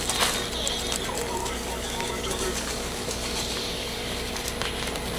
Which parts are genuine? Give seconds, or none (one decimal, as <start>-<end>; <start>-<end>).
0.0-1.4; 4.5-5.2